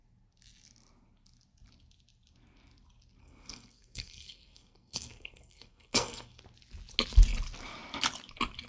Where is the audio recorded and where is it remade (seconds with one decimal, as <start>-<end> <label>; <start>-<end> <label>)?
0.0-3.2 recorded; 3.2-6.4 remade; 6.4-8.7 recorded